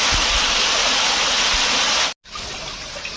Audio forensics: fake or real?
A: real